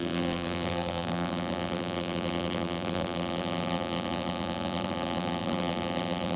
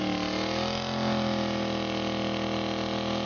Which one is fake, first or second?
first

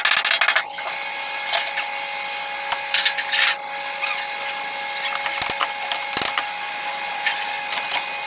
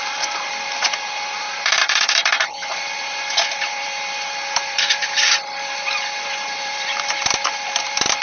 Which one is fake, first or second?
second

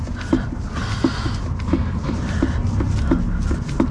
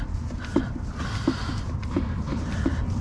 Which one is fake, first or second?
second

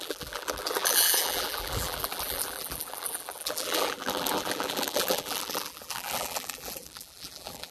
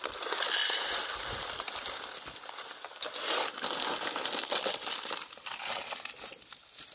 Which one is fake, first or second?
first